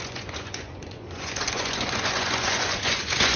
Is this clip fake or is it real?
fake